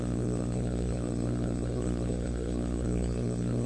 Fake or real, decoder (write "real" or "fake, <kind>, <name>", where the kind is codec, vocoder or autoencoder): fake, codec, SNAC